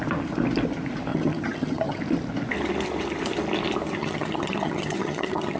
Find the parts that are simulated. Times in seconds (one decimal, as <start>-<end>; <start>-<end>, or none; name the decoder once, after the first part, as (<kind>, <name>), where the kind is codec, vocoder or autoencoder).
1.1-2.0 (vocoder, HiFi-GAN); 4.0-5.6